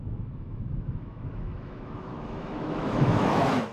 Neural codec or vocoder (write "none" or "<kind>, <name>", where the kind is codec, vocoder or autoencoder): autoencoder, DAC-VAE